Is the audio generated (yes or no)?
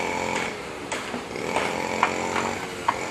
no